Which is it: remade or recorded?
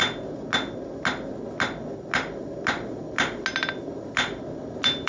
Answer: recorded